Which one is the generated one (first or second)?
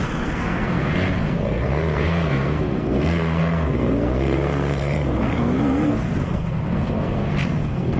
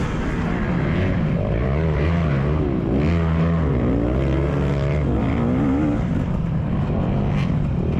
first